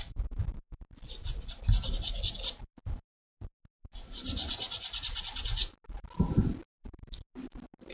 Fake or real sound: real